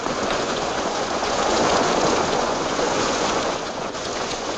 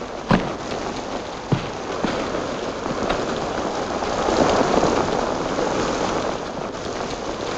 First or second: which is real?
second